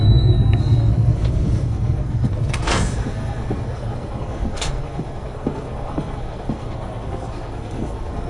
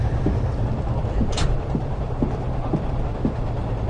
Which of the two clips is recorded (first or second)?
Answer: second